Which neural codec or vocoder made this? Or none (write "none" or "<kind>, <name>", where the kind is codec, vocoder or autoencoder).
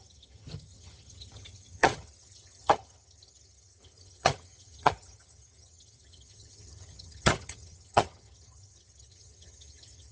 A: vocoder, HiFi-GAN